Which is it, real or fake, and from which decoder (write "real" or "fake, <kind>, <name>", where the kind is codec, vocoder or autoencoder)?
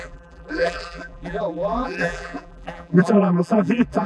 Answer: fake, vocoder, BigVGAN v2